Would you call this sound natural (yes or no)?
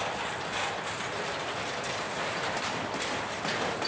yes